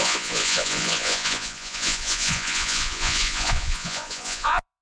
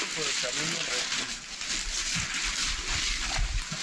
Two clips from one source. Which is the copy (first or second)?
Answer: first